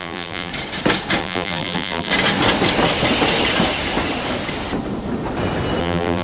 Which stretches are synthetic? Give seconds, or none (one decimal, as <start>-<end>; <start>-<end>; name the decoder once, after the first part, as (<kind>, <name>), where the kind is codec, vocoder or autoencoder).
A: 0.0-0.5 (vocoder, BigVGAN v2); 1.2-2.1; 5.8-6.2